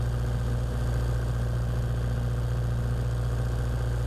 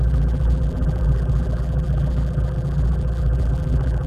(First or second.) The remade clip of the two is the second